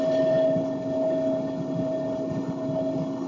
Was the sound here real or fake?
fake